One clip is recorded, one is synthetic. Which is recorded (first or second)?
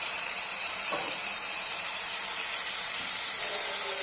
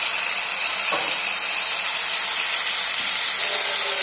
second